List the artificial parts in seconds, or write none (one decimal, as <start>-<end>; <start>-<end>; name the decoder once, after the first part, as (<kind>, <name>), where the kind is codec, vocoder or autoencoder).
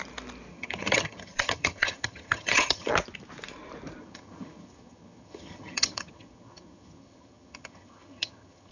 0.5-2.9 (vocoder, HiFi-GAN); 4.0-8.7